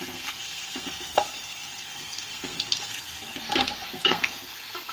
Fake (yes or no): yes